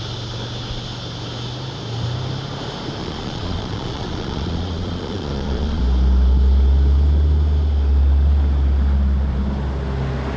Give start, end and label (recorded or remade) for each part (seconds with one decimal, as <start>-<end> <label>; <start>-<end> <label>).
0.0-3.0 recorded; 3.0-5.8 remade; 5.8-10.4 recorded